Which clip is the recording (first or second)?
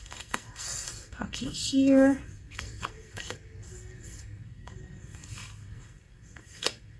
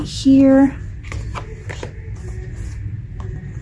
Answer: second